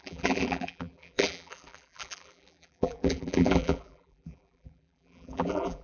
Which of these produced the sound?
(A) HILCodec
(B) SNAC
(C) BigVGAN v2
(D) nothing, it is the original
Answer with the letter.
C